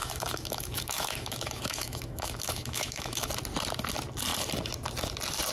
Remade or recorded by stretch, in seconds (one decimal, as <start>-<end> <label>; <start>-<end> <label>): 0.0-3.3 remade; 3.3-5.5 recorded